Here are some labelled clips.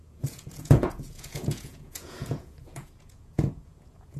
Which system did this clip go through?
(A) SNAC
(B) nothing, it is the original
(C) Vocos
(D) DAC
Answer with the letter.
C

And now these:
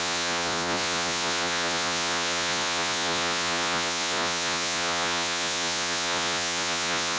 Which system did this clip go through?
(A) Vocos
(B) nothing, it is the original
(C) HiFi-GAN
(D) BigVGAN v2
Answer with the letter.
A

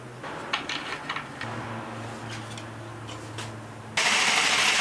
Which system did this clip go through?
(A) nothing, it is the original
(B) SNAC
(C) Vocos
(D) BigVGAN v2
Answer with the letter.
A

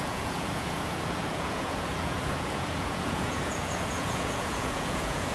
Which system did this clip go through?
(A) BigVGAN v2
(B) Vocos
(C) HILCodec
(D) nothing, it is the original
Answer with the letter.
B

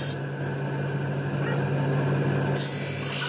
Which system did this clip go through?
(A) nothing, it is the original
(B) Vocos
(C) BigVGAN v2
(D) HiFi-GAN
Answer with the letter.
A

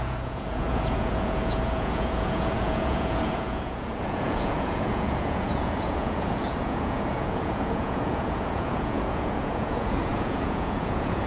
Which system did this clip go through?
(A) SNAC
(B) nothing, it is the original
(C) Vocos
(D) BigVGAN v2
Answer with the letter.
C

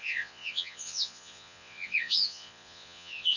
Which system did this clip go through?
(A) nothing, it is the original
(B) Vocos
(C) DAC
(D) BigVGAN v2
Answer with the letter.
B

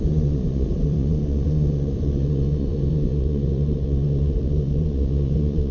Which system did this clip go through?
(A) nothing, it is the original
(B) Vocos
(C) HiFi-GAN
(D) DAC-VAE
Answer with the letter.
B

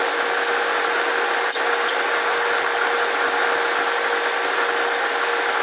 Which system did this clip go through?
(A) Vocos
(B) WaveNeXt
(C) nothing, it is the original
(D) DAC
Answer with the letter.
C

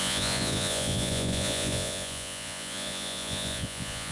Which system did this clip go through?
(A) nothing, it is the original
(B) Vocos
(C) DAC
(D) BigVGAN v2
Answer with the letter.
B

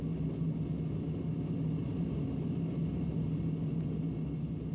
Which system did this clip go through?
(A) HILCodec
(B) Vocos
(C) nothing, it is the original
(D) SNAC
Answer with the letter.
C